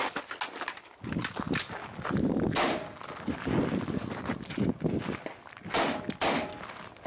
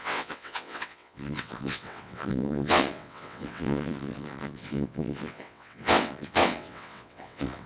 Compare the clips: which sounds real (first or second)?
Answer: first